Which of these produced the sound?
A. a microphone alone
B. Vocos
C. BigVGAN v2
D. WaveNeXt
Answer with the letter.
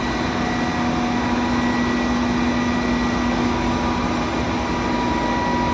A